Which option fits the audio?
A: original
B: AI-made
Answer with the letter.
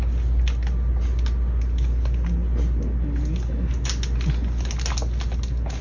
A